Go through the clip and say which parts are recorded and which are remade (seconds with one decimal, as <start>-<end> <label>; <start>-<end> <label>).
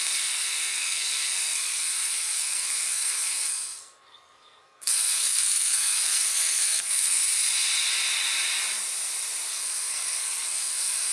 0.0-7.2 remade; 7.2-9.5 recorded; 9.5-11.1 remade